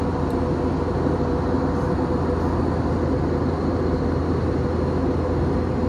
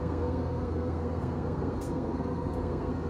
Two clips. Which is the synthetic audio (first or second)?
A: second